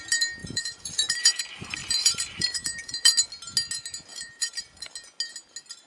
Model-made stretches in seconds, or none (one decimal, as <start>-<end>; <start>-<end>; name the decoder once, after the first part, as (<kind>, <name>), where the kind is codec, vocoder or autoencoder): 0.4-1.4 (vocoder, BigVGAN v2); 1.8-3.1; 4.1-4.9